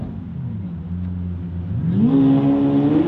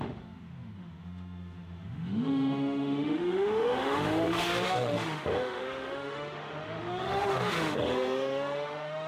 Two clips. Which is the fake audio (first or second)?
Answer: second